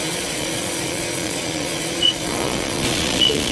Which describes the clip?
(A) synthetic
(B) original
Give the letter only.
A